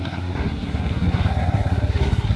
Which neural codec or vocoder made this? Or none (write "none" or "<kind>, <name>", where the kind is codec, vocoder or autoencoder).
codec, SNAC